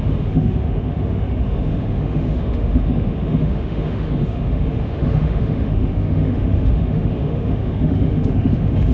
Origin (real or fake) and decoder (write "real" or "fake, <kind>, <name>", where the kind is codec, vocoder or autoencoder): fake, autoencoder, DAC-VAE